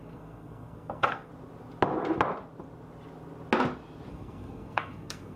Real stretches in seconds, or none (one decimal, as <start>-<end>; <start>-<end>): 1.3-4.1